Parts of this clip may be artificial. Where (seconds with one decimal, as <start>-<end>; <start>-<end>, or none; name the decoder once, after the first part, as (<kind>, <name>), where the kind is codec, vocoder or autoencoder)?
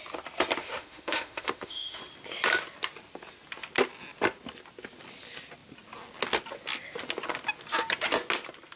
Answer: 0.6-2.0 (autoencoder, DAC-VAE)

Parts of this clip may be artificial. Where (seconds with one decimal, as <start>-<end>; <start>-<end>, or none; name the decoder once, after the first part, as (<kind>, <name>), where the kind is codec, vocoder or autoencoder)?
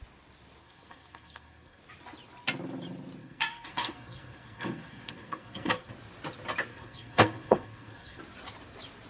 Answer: 0.6-1.8 (codec, SNAC); 3.2-5.9; 6.7-8.2